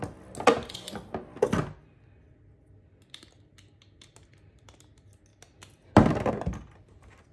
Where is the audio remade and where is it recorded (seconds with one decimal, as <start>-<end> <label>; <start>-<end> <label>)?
0.0-7.3 recorded